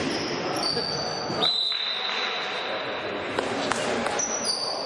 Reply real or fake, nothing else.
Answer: real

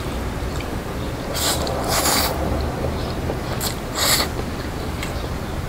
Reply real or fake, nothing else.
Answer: fake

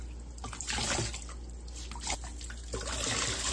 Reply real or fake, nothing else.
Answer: real